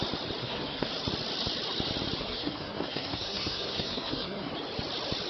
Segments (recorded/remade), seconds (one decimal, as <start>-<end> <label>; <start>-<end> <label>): 0.0-0.4 recorded; 0.4-0.9 remade; 0.9-2.2 recorded; 2.2-4.5 remade; 4.5-5.3 recorded